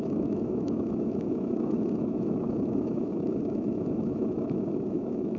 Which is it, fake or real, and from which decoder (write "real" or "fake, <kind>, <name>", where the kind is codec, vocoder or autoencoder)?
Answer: fake, autoencoder, DAC-VAE